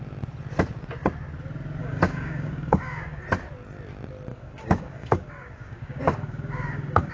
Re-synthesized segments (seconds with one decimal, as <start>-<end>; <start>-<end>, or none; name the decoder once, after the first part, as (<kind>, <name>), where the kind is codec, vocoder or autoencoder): 1.8-3.2 (codec, DAC); 4.3-7.1